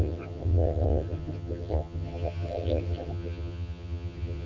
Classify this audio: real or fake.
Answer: fake